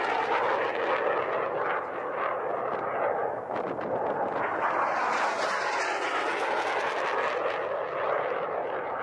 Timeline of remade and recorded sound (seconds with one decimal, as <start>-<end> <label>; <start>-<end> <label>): 0.0-3.2 recorded; 3.2-3.7 remade; 3.7-9.0 recorded

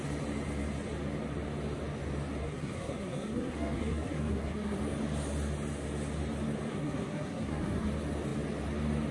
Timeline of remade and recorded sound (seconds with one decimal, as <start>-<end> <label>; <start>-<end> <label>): 0.0-2.4 recorded; 2.4-4.8 remade; 4.8-6.7 recorded; 6.7-7.9 remade; 7.9-9.1 recorded

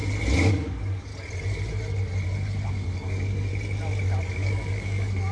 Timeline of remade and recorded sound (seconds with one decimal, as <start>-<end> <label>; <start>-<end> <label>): 0.0-0.5 recorded; 0.5-1.1 remade; 1.1-2.7 recorded; 2.7-3.5 remade; 3.5-4.3 recorded; 4.3-5.3 remade

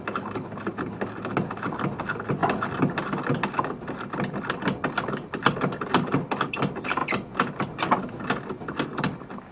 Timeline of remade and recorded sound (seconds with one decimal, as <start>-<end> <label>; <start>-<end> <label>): 0.0-9.5 recorded

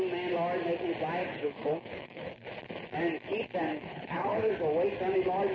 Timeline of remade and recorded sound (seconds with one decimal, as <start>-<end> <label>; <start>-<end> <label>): 0.0-1.2 recorded; 1.2-2.5 remade; 2.5-3.7 recorded; 3.7-4.5 remade; 4.5-5.5 recorded

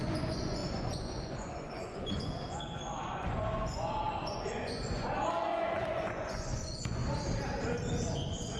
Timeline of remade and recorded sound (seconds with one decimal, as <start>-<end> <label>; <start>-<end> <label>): 0.0-7.0 remade; 7.0-8.1 recorded; 8.1-8.6 remade

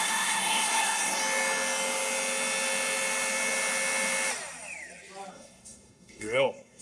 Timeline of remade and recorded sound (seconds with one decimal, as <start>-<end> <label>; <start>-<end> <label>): 0.0-1.2 remade; 1.2-5.3 recorded; 5.3-6.8 remade